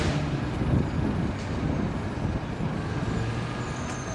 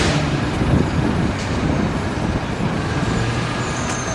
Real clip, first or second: first